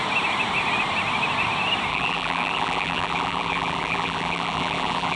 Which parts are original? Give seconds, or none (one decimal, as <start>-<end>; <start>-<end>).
0.0-1.9